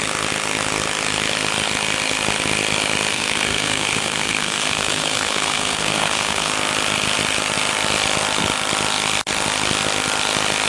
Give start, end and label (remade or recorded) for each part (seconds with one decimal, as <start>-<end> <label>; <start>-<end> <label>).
0.0-3.1 recorded; 3.1-6.5 remade; 6.5-10.7 recorded